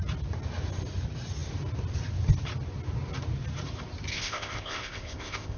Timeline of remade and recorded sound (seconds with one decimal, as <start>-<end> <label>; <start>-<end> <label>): 0.0-4.1 recorded; 4.1-5.6 remade